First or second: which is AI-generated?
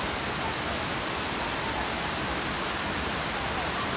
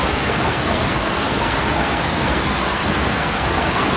second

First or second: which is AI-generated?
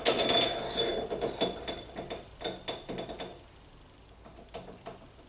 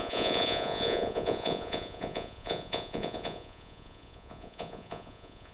second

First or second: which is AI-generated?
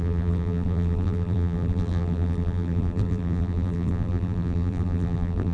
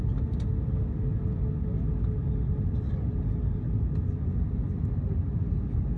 first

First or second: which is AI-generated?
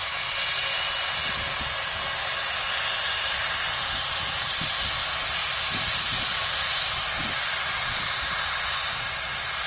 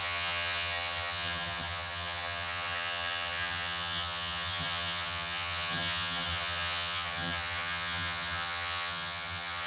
second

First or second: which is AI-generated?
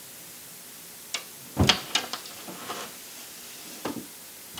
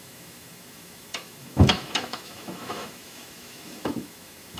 second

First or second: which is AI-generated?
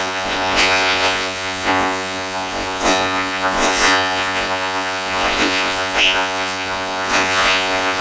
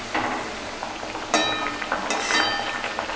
first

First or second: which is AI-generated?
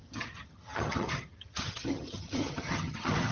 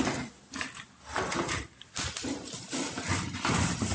first